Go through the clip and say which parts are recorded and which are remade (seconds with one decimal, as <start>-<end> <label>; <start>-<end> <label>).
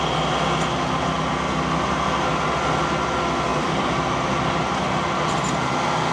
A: 0.0-3.5 recorded; 3.5-4.5 remade; 4.5-6.1 recorded